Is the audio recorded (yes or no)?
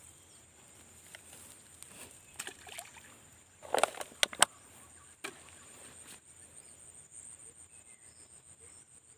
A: yes